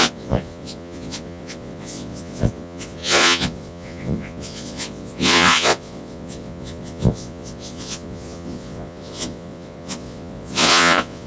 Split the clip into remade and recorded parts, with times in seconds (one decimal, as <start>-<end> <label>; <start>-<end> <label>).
0.0-11.3 remade